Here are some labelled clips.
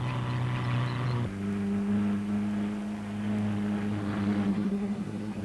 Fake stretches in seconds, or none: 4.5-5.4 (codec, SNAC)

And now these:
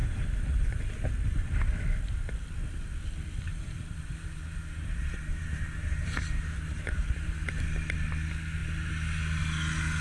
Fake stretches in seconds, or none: 0.0-1.1 (vocoder, BigVGAN v2); 3.5-7.5

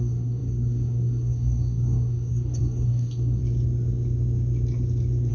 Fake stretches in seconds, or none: 0.0-3.4 (codec, DAC)

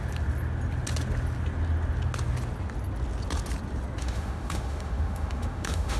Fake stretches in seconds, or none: 4.0-6.0 (autoencoder, DAC-VAE)

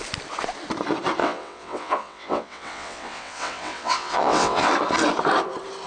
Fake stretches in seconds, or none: 1.2-4.7 (vocoder, WaveNeXt)